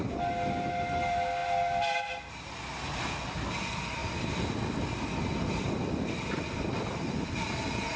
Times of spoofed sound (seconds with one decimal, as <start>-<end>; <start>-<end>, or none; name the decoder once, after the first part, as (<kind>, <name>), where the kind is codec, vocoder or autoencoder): 4.0-7.5 (vocoder, BigVGAN v2)

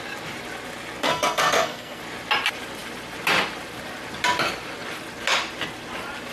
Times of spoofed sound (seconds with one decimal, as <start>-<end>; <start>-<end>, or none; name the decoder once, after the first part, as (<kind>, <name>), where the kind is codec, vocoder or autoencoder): 1.0-2.0 (codec, SNAC)

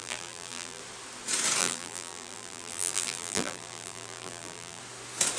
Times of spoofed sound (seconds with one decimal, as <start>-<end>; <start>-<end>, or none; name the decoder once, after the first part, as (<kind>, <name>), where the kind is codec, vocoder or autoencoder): 0.0-0.8 (vocoder, BigVGAN v2); 1.6-4.8

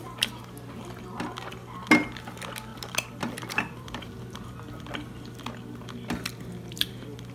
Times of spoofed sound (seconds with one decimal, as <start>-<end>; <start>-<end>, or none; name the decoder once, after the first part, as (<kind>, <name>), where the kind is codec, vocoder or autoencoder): 2.7-4.1 (vocoder, BigVGAN v2)